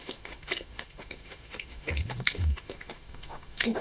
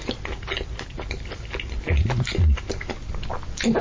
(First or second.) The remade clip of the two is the first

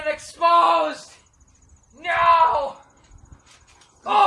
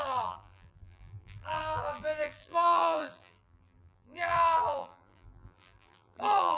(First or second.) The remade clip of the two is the second